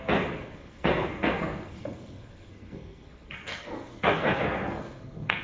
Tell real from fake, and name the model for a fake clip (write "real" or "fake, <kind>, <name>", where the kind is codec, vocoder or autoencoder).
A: fake, codec, SNAC